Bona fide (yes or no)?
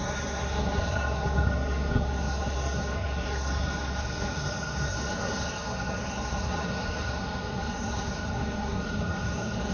no